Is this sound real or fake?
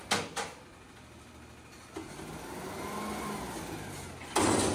real